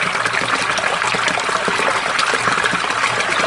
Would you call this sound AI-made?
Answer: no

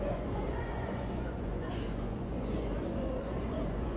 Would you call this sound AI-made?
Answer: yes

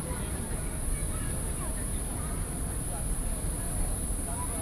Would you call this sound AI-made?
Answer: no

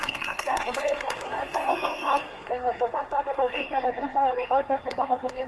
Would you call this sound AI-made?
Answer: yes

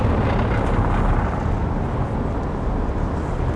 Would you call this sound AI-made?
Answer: no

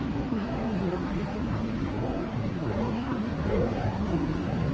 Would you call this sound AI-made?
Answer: yes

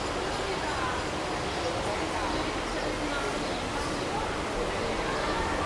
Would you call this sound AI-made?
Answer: no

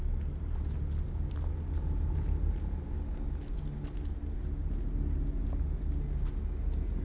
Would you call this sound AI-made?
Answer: no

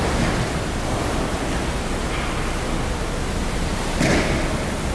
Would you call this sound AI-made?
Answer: no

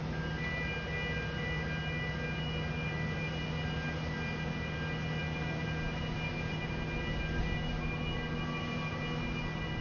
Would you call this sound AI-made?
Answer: no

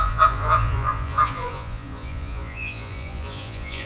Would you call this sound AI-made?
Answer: yes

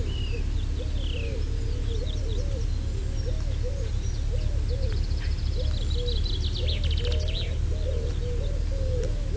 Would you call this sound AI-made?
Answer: no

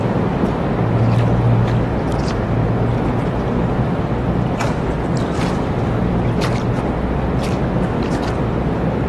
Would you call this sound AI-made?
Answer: no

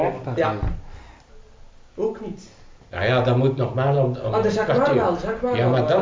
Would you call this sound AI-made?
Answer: no